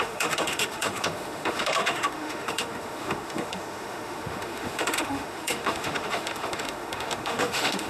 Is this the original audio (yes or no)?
no